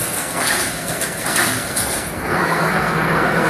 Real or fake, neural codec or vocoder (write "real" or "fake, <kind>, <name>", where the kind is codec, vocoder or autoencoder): fake, codec, SNAC